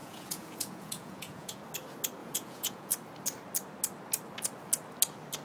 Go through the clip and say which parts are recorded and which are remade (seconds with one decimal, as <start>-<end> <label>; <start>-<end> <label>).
0.0-1.6 remade; 1.6-2.2 recorded; 2.2-2.9 remade; 2.9-5.4 recorded